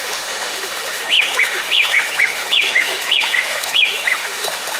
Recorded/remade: remade